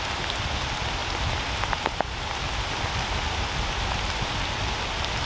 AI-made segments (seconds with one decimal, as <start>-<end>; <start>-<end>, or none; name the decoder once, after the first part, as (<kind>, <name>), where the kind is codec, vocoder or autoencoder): none

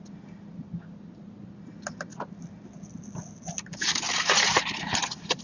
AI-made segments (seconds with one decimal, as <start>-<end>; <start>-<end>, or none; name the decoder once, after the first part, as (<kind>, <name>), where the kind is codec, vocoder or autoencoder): none